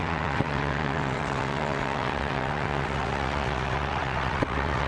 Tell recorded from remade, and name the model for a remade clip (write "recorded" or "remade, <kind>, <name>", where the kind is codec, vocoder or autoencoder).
remade, vocoder, WaveNeXt